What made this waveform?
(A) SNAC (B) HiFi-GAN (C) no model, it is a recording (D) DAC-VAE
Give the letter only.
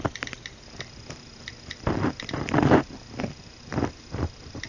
C